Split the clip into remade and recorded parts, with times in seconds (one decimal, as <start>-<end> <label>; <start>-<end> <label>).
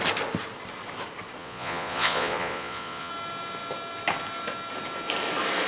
0.0-1.4 recorded; 1.4-3.1 remade; 3.1-5.7 recorded